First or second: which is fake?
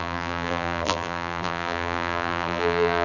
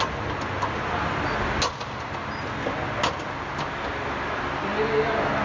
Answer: first